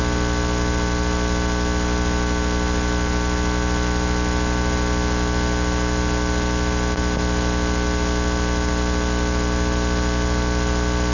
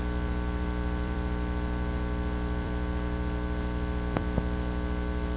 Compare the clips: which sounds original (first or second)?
first